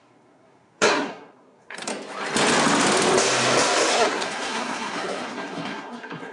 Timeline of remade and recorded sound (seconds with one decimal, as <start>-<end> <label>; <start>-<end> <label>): 0.0-1.9 remade; 1.9-3.9 recorded; 3.9-6.3 remade